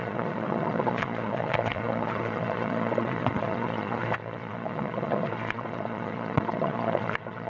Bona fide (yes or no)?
no